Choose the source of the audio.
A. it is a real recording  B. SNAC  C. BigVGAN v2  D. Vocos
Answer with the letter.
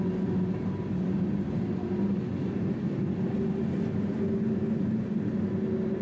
A